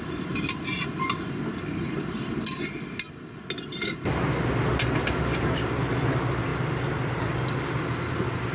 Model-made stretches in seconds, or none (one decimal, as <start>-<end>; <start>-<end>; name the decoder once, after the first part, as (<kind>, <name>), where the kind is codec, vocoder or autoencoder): none